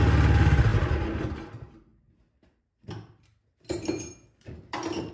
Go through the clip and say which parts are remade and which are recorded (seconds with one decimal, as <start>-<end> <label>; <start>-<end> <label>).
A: 0.0-5.1 recorded